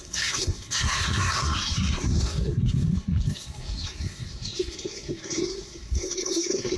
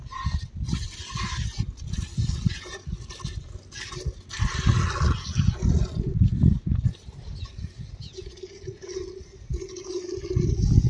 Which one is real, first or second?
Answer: second